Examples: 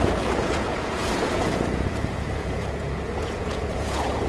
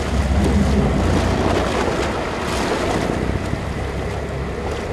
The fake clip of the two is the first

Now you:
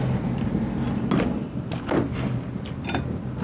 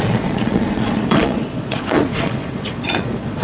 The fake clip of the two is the second